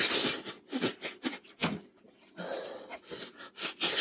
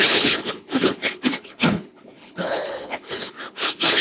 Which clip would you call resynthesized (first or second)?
second